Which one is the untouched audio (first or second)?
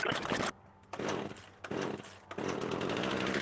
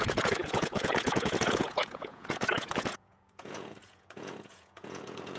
first